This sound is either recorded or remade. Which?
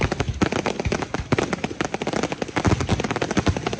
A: recorded